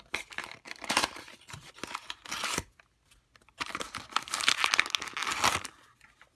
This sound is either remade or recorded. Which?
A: recorded